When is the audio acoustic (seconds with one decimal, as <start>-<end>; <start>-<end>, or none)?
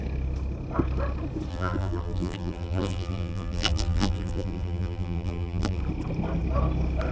0.0-1.5; 5.8-7.1